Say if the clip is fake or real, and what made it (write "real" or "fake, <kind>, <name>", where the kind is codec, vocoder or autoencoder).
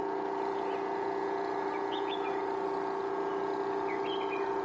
real